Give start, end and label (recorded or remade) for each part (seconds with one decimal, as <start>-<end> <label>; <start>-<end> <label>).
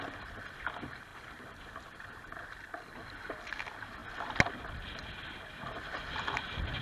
0.0-1.1 recorded; 1.1-2.2 remade; 2.2-6.8 recorded